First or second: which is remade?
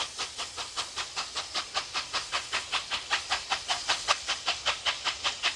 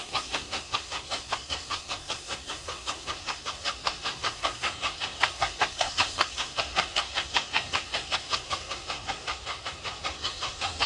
second